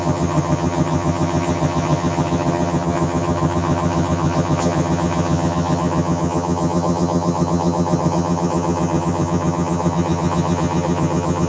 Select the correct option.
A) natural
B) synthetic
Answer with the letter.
B